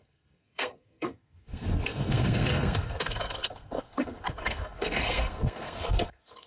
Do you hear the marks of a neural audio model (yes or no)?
yes